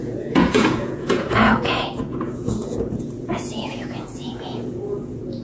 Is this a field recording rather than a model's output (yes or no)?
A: no